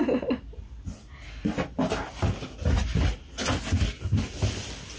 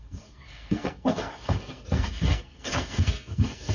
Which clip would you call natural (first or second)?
first